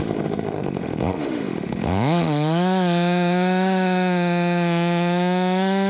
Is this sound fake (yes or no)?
yes